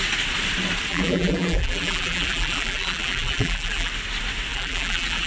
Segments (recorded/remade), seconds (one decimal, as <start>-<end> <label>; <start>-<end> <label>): 0.0-0.9 recorded; 0.9-3.9 remade; 3.9-4.5 recorded; 4.5-5.3 remade